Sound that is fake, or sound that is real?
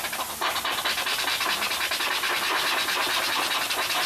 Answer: real